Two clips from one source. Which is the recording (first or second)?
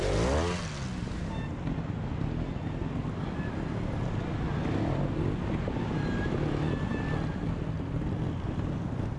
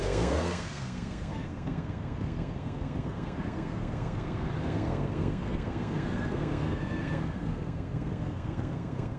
first